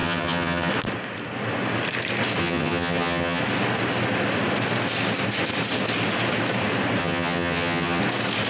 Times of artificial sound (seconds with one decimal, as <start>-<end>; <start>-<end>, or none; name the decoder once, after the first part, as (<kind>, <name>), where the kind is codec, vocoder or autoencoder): 0.0-0.7 (vocoder, HiFi-GAN); 2.4-3.4; 7.0-8.0